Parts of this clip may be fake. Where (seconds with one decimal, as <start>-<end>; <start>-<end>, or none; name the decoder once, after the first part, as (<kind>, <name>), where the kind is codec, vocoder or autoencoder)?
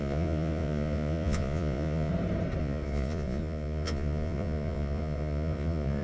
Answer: 0.0-2.1 (vocoder, Vocos); 2.6-6.0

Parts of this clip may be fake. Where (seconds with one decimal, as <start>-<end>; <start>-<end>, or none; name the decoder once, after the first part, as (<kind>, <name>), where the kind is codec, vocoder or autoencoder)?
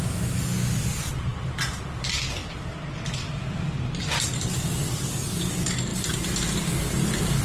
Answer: none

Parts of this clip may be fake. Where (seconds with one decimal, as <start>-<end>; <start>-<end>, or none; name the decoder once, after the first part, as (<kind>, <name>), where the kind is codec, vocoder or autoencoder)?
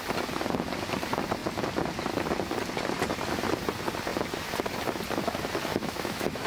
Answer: 5.7-6.5 (autoencoder, DAC-VAE)